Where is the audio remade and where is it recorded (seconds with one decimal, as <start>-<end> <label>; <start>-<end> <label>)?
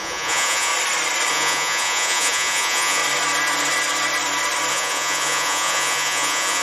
0.0-0.7 remade; 0.7-1.3 recorded; 1.3-3.0 remade; 3.0-4.7 recorded; 4.7-6.6 remade